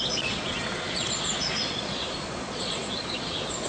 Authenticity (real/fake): fake